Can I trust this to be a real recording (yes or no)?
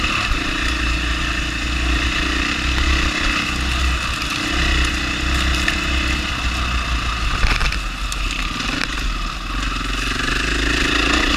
yes